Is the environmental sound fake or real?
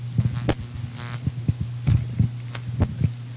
real